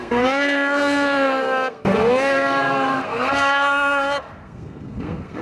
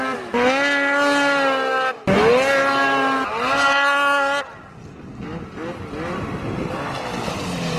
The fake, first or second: first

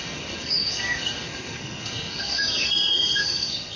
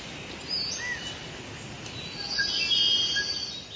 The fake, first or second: first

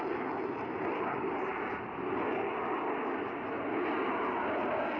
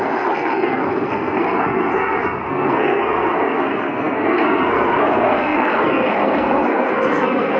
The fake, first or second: second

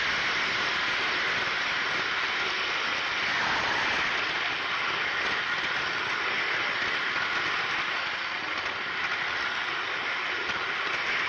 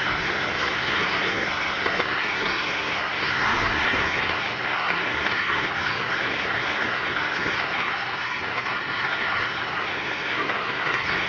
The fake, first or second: second